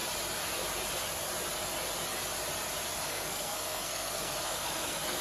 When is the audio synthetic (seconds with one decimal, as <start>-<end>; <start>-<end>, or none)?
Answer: 3.1-5.2